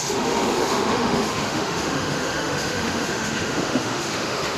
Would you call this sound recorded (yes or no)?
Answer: no